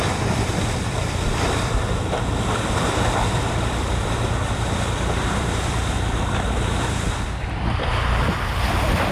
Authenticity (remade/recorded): remade